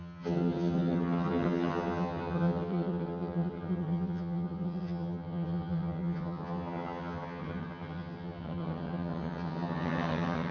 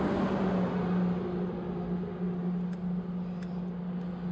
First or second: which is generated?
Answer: first